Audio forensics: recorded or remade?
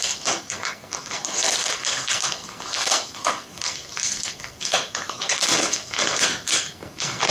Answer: remade